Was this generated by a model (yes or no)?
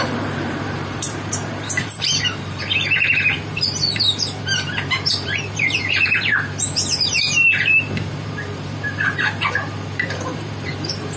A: yes